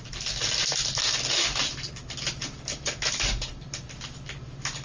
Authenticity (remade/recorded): recorded